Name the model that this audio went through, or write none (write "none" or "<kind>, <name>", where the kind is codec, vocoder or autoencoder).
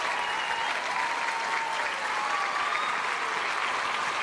none